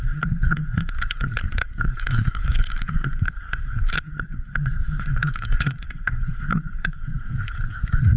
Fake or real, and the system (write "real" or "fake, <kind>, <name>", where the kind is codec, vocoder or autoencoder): fake, codec, SNAC